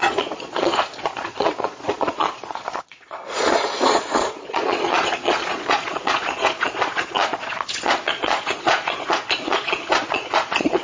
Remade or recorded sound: remade